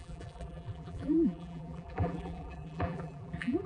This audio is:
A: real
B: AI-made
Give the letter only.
B